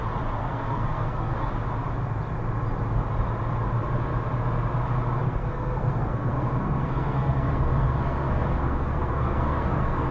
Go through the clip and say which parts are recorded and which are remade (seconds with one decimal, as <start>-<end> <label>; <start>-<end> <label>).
0.0-0.4 recorded; 0.4-1.5 remade; 1.5-5.2 recorded; 5.2-10.1 remade